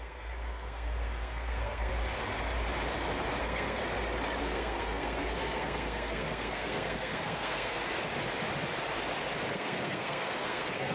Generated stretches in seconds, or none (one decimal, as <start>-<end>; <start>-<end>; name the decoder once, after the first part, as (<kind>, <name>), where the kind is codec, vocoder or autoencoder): 0.0-1.9 (codec, SNAC); 3.4-3.8; 4.4-7.8; 9.5-10.9